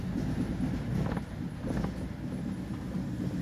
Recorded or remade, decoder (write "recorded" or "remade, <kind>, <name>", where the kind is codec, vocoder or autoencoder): recorded